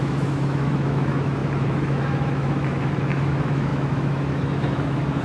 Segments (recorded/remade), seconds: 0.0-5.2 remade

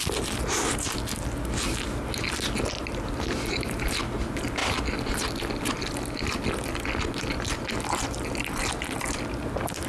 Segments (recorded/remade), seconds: 0.0-9.9 recorded